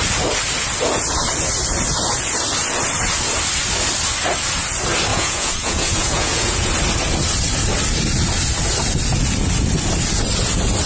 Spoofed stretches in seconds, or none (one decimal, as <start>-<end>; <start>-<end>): 5.1-6.7